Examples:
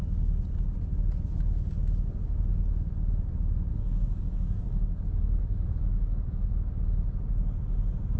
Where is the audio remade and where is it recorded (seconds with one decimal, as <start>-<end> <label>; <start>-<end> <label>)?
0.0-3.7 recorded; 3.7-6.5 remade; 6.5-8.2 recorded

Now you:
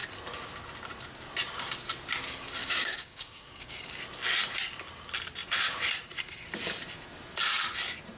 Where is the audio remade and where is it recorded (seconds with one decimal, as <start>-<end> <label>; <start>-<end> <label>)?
0.0-2.6 recorded; 2.6-4.0 remade; 4.0-8.2 recorded

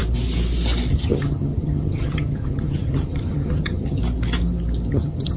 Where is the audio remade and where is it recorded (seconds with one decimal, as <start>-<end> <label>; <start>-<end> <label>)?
0.0-0.9 recorded; 0.9-4.0 remade; 4.0-4.9 recorded; 4.9-5.4 remade

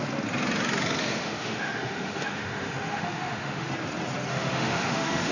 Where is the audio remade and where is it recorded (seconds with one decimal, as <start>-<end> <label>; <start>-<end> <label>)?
0.0-1.0 recorded; 1.0-3.7 remade; 3.7-4.3 recorded; 4.3-5.3 remade